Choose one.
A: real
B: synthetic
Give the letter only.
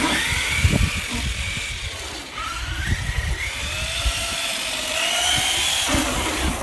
A